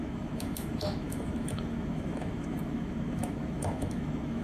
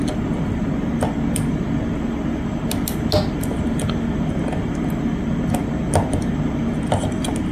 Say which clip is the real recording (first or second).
second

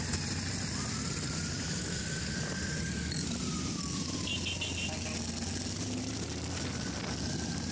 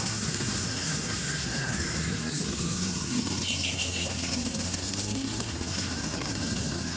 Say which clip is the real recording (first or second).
first